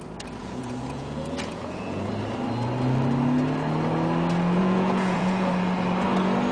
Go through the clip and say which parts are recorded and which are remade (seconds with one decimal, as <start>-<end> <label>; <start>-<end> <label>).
0.0-0.4 recorded; 0.4-2.1 remade; 2.1-4.6 recorded; 4.6-5.5 remade; 5.5-6.5 recorded